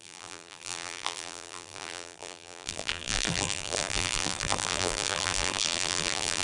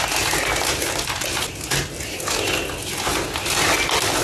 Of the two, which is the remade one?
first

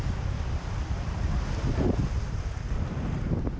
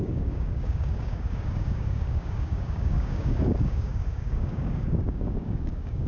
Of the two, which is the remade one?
second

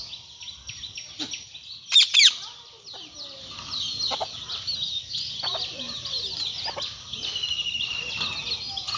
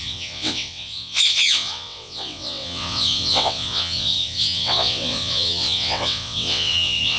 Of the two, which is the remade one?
second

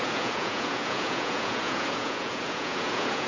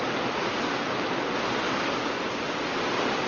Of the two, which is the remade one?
first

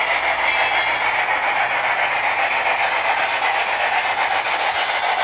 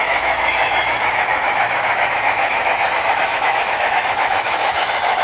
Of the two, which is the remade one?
second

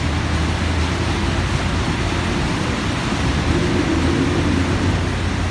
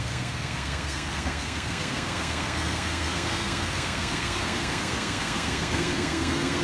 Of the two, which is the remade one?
second